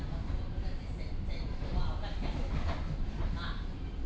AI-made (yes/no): no